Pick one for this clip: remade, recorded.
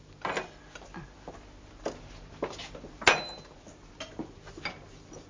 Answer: recorded